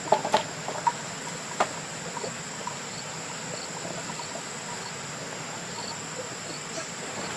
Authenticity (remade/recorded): recorded